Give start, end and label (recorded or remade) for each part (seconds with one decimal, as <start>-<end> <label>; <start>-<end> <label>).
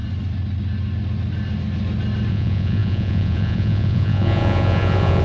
0.0-2.3 recorded; 2.3-5.2 remade